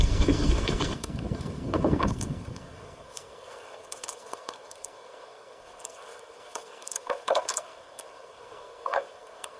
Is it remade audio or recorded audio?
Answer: remade